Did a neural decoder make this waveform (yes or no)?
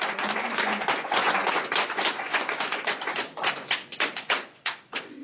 yes